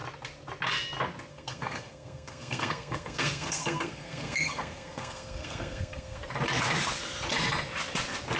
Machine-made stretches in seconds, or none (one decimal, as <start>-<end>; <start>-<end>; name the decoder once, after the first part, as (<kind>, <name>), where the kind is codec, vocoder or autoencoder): 1.3-6.2 (codec, SNAC)